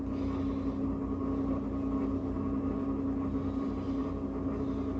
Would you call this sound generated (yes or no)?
no